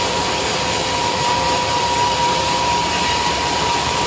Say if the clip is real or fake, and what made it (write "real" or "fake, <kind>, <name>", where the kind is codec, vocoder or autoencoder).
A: fake, vocoder, BigVGAN v2